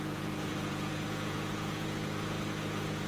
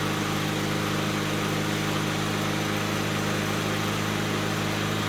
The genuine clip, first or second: second